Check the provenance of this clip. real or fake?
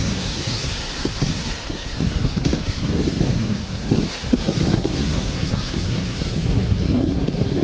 fake